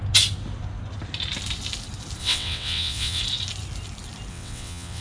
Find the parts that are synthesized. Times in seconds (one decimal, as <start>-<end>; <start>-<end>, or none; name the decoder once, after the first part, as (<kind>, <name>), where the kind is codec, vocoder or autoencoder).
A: 2.2-3.2 (vocoder, WaveNeXt); 4.3-5.0